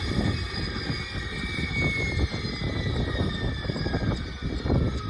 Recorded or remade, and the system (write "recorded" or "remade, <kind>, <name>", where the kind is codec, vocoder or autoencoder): recorded